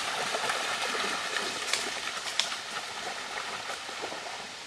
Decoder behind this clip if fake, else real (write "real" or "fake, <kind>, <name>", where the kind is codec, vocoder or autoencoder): real